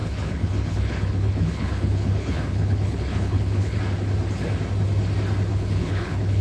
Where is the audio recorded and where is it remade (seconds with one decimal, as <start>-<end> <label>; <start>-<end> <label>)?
0.0-3.8 remade; 3.8-5.5 recorded; 5.5-6.4 remade

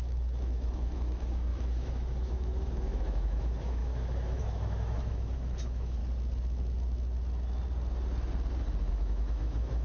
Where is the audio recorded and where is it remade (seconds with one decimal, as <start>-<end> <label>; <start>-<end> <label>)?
0.0-6.0 remade; 6.0-8.9 recorded; 8.9-9.8 remade

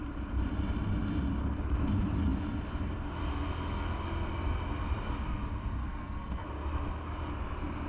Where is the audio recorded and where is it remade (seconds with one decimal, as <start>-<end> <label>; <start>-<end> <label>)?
0.0-5.8 recorded; 5.8-6.5 remade; 6.5-7.9 recorded